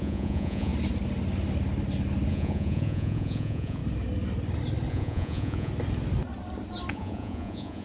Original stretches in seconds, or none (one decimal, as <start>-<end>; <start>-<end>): 0.7-2.3; 3.8-4.9; 5.7-6.9